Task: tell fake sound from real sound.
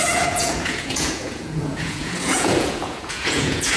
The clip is fake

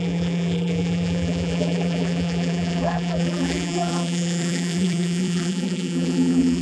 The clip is fake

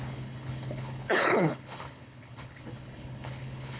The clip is fake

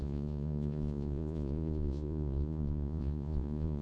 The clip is fake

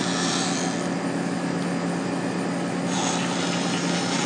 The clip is real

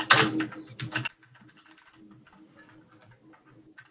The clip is real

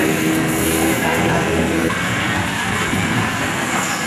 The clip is fake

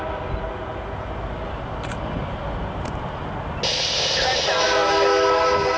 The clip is real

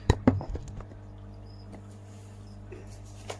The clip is fake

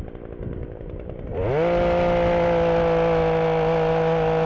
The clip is real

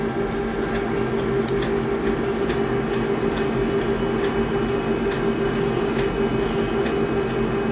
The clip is real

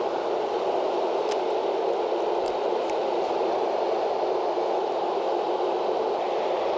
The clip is real